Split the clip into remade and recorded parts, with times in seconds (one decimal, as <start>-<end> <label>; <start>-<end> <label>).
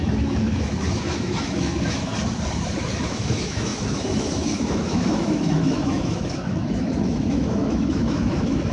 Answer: 0.0-2.1 remade; 2.1-2.8 recorded; 2.8-8.7 remade